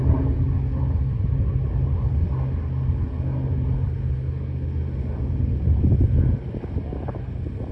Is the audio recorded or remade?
recorded